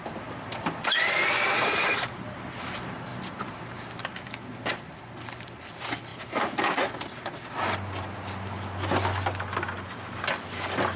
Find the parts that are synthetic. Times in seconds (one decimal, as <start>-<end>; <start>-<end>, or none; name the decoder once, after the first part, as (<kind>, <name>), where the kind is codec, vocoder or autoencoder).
none